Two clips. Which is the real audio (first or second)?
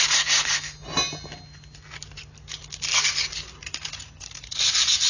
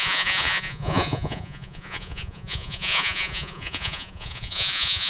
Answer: first